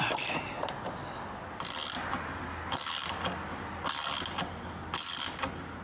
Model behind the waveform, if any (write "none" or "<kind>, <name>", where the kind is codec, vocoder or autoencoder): none